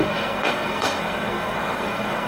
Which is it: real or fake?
fake